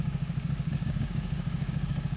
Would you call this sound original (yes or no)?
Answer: no